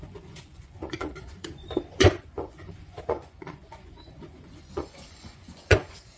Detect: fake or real fake